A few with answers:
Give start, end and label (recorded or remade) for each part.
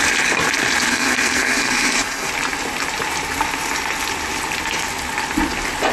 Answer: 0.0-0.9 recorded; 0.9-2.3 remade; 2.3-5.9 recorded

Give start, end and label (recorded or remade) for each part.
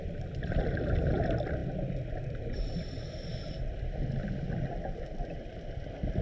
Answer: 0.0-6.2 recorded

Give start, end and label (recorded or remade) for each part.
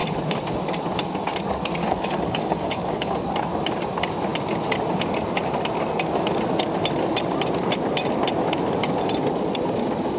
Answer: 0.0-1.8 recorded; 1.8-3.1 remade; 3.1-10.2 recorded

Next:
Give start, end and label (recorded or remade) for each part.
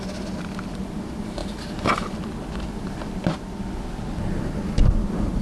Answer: 0.0-5.4 recorded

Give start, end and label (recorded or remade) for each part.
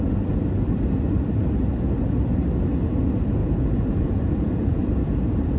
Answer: 0.0-3.4 recorded; 3.4-4.8 remade; 4.8-5.6 recorded